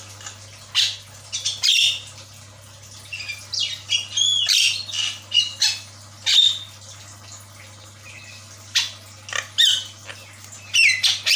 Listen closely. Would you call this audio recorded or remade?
recorded